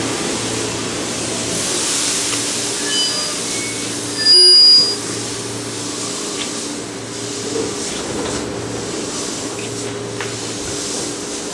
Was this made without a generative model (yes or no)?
yes